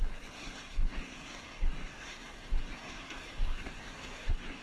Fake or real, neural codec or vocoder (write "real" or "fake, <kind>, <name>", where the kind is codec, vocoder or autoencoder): fake, codec, SNAC